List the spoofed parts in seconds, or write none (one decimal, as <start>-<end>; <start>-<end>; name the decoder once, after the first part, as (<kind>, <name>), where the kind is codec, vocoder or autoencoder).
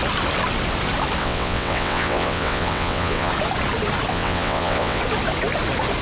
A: 1.2-3.3 (vocoder, WaveNeXt); 4.1-5.0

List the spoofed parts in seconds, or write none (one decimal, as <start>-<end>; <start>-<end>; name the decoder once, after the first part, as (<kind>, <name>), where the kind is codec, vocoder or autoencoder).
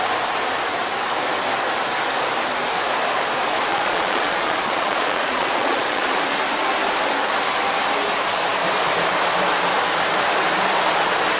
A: 3.7-6.2 (vocoder, Vocos)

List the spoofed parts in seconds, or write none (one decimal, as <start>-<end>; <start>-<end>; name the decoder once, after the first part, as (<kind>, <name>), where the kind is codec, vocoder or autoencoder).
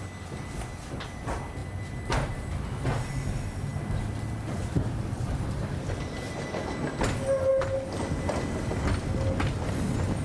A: none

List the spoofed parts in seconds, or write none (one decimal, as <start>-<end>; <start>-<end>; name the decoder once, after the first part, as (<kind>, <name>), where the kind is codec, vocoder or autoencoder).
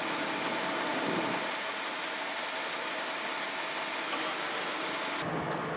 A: none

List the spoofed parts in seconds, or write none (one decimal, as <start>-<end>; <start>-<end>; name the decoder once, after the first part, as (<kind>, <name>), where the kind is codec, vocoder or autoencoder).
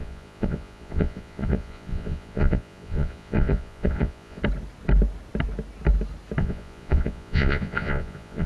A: 0.0-4.4 (vocoder, Vocos); 6.4-8.5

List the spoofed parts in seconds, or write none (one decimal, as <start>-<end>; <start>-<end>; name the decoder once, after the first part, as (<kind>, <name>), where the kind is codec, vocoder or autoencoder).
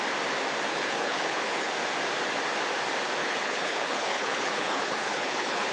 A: 0.7-1.7 (codec, HILCodec); 3.2-5.7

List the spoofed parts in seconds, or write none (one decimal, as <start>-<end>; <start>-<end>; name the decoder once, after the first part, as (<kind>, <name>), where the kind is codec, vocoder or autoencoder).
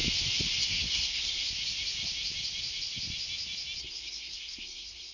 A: 0.6-1.4 (codec, SNAC); 3.8-5.1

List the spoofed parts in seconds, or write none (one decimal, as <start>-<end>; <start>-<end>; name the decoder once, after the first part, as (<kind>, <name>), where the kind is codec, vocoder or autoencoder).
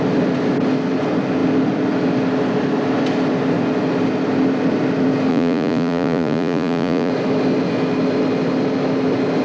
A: 5.3-7.1 (vocoder, Vocos)